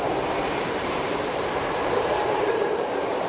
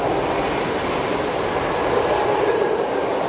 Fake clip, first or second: first